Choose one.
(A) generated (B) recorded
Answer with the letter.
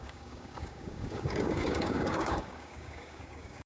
A